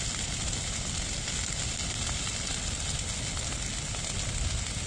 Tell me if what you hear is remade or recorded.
recorded